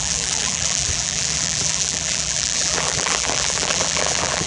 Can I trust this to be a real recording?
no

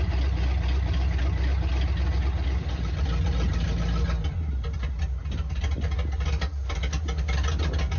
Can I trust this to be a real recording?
yes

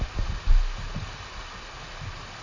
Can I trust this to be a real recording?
yes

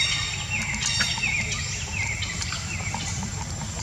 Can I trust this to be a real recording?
no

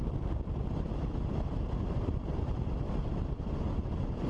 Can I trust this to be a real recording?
yes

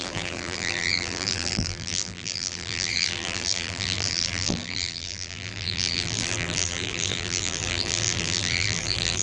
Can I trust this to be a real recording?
no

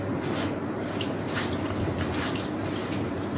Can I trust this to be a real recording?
no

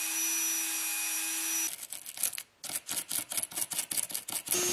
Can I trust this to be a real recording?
yes